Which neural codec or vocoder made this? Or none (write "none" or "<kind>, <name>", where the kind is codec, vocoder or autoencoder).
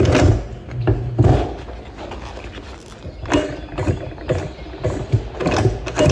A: none